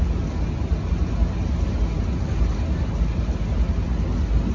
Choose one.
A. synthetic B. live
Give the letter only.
B